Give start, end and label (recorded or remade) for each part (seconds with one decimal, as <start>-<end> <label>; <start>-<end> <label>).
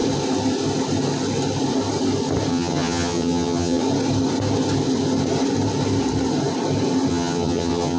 0.0-2.5 recorded; 2.5-3.8 remade; 3.8-7.1 recorded; 7.1-8.0 remade